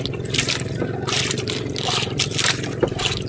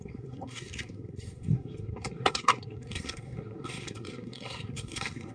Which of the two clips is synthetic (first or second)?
second